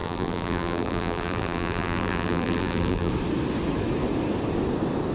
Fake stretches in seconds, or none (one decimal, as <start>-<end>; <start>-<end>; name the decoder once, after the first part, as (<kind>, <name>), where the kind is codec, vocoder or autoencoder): 0.0-3.1 (vocoder, BigVGAN v2)